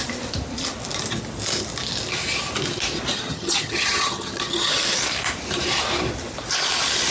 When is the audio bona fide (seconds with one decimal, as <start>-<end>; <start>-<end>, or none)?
0.0-3.1; 4.8-7.1